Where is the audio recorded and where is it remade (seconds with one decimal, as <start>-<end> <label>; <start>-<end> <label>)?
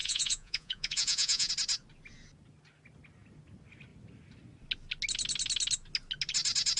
0.0-1.5 remade; 1.5-6.8 recorded